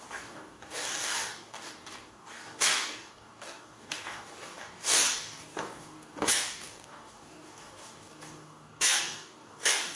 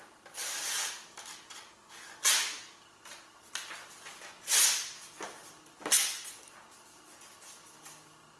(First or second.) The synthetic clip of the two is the first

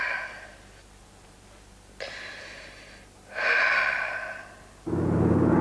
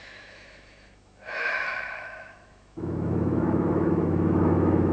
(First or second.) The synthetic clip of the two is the second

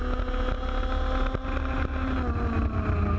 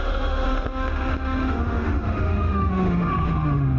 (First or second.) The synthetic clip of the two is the second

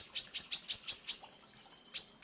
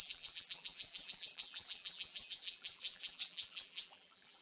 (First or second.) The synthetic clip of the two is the second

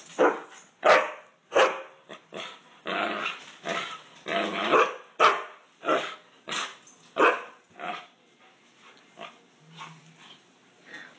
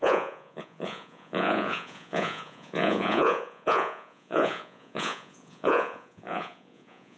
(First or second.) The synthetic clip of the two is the second